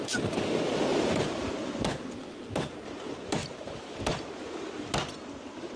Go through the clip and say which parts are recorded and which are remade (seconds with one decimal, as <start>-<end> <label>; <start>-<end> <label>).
0.0-0.9 recorded; 0.9-1.5 remade; 1.5-3.4 recorded; 3.4-4.0 remade; 4.0-5.8 recorded